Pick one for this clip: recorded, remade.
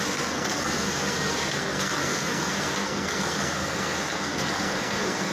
remade